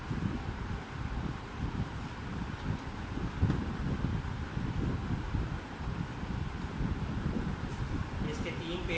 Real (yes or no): yes